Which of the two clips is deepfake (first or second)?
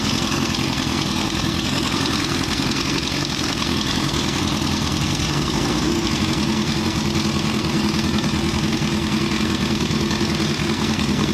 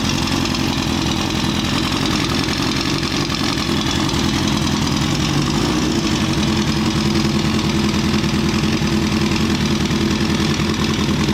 first